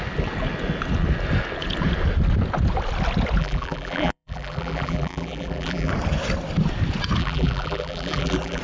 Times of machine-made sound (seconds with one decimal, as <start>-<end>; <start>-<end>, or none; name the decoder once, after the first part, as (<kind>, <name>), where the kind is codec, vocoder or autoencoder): 3.4-5.9 (vocoder, BigVGAN v2); 7.2-8.6